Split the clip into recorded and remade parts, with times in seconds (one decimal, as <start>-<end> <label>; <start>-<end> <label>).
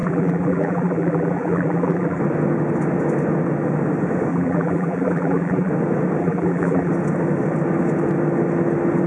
0.0-2.2 remade; 2.2-4.3 recorded; 4.3-5.7 remade; 5.7-6.2 recorded; 6.2-6.9 remade; 6.9-9.1 recorded